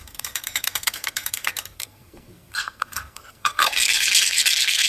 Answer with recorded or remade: remade